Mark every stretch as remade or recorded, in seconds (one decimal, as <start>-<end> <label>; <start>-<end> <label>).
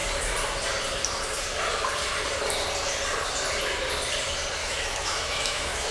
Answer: 0.0-4.6 recorded; 4.6-5.9 remade